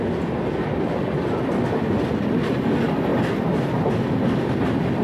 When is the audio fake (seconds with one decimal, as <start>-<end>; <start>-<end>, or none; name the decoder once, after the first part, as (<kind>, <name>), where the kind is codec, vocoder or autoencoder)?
none